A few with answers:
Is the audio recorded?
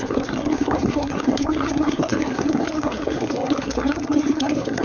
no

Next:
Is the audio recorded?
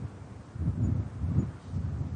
yes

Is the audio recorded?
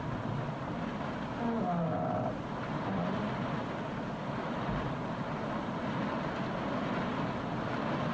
yes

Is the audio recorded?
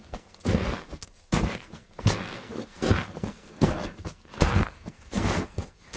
no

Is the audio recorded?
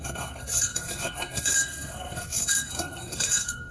no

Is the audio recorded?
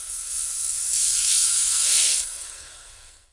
no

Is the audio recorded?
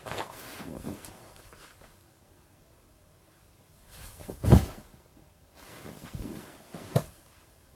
no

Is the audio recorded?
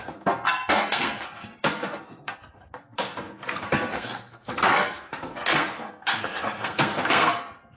no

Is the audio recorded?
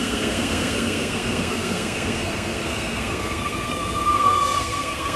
no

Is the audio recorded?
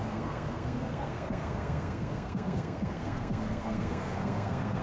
no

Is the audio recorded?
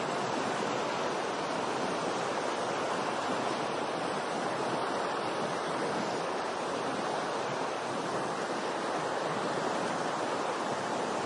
yes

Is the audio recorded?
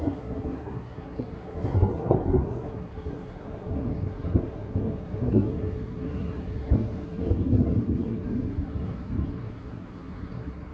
no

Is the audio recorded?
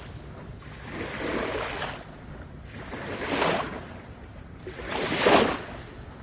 yes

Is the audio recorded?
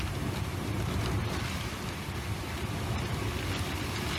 yes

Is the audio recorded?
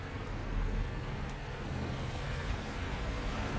no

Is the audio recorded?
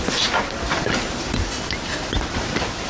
yes